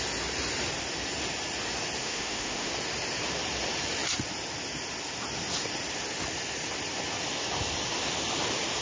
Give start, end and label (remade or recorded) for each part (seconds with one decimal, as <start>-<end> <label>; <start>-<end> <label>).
0.0-2.0 recorded; 2.0-2.7 remade; 2.7-8.8 recorded